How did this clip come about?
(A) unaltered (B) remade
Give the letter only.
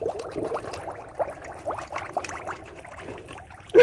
B